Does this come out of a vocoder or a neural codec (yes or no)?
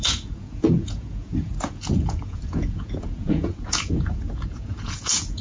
yes